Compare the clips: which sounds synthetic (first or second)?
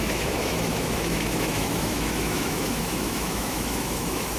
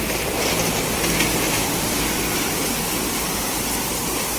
first